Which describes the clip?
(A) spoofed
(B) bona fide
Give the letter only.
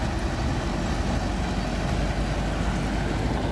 B